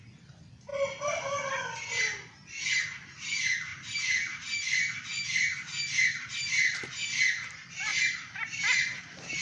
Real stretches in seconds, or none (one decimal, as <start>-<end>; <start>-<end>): 0.0-9.4